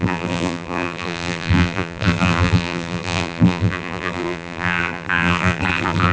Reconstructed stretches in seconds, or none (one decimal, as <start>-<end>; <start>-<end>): 0.0-6.1